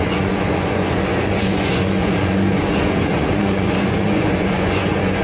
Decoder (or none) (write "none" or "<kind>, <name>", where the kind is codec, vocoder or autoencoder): vocoder, Vocos